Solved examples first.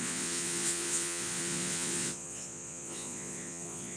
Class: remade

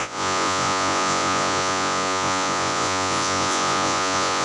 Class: remade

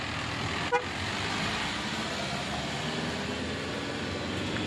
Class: recorded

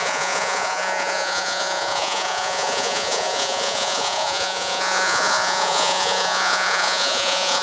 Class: remade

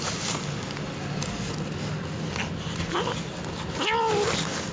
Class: recorded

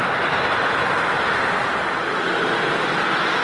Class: recorded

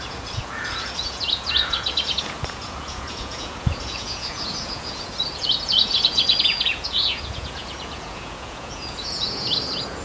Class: remade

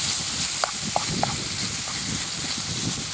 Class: recorded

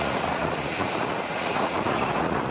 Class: remade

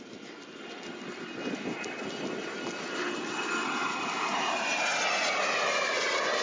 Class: recorded